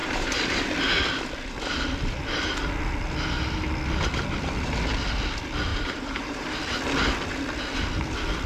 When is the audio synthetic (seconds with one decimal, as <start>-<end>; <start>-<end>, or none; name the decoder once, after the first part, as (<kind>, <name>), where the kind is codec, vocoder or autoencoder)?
0.0-0.6 (vocoder, BigVGAN v2); 5.7-6.6

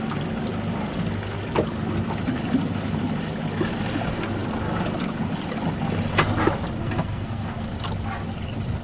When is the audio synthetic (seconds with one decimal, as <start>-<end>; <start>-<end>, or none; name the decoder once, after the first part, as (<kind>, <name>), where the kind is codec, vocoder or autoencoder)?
6.8-7.7 (codec, SNAC)

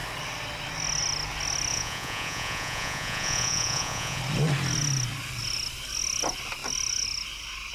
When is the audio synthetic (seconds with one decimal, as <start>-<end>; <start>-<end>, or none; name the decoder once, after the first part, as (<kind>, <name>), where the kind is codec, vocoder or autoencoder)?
1.7-4.2 (vocoder, Vocos)